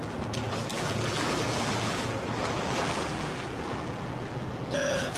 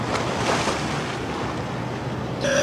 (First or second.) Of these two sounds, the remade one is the first